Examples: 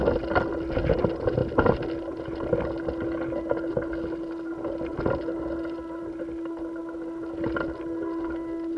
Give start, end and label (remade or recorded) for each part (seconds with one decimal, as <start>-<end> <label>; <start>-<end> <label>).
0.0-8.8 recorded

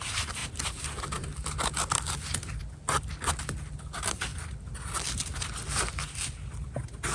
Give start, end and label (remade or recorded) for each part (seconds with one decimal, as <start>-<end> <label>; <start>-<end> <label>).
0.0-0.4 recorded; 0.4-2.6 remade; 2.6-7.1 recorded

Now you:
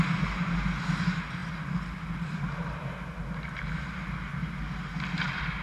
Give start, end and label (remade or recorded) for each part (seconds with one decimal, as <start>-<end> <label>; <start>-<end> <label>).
0.0-5.6 recorded

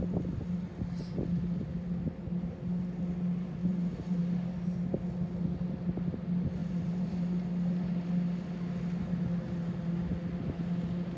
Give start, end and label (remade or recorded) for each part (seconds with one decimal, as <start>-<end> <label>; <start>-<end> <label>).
0.0-3.6 recorded; 3.6-4.2 remade; 4.2-6.6 recorded; 6.6-7.2 remade; 7.2-11.2 recorded